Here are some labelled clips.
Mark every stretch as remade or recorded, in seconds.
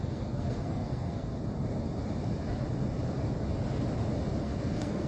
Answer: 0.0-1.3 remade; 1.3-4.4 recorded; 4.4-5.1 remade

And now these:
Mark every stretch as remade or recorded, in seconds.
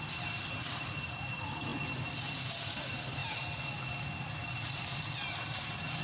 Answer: 0.0-6.0 recorded